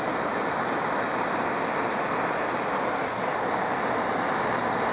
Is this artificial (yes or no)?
no